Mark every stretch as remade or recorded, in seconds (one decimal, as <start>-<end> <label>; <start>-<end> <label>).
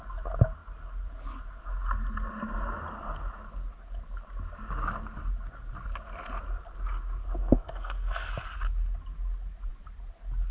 0.0-7.4 recorded; 7.4-8.3 remade; 8.3-10.5 recorded